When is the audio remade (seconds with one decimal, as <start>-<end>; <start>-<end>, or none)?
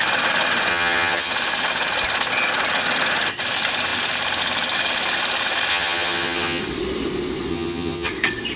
0.7-1.3; 5.7-6.6; 7.5-8.1